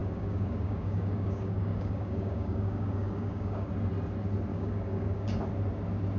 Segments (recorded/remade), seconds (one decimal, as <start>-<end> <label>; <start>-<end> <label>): 0.0-3.7 remade; 3.7-4.5 recorded; 4.5-5.4 remade; 5.4-6.2 recorded